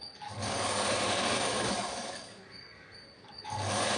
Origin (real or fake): fake